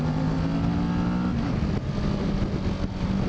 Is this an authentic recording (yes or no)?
yes